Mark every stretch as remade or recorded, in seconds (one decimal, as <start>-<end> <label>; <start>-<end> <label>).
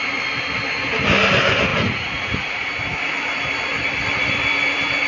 0.0-1.7 recorded; 1.7-2.7 remade; 2.7-5.1 recorded